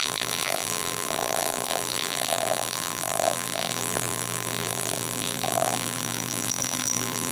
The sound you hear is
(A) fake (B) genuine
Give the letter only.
A